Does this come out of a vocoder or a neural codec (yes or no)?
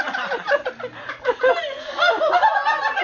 no